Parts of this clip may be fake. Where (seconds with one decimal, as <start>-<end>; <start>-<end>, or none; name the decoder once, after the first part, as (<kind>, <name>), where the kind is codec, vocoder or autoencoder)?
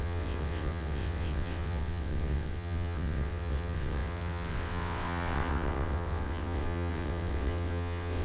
0.0-8.2 (vocoder, WaveNeXt)